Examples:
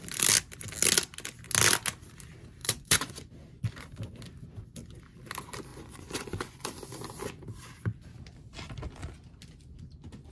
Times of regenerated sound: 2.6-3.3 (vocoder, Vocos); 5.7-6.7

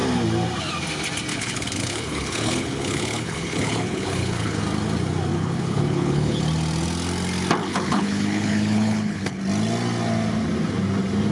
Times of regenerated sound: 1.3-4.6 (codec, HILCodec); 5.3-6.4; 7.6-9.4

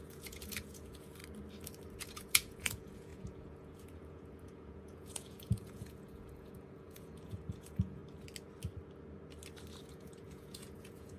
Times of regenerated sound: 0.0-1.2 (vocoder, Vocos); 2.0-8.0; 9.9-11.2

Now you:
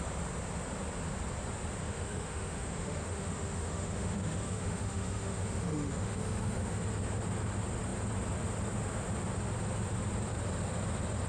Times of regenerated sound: 1.8-6.8 (autoencoder, DAC-VAE)

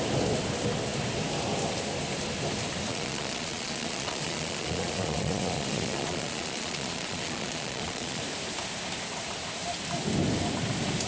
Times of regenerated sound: 2.9-8.2 (vocoder, Vocos)

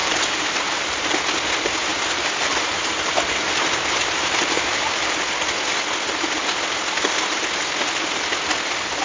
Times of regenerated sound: 0.0-1.2 (vocoder, BigVGAN v2); 1.9-4.9

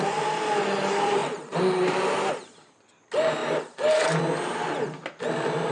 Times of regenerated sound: 1.2-2.3 (vocoder, BigVGAN v2)

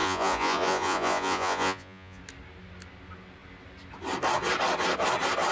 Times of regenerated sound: 0.0-2.2 (vocoder, Vocos)